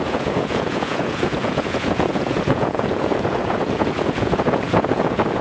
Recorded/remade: remade